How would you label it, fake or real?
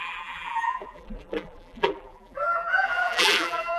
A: fake